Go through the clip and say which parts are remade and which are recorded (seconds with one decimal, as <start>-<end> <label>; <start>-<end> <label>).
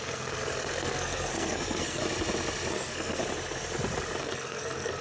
0.0-2.0 remade; 2.0-2.7 recorded; 2.7-3.2 remade; 3.2-4.2 recorded; 4.2-5.0 remade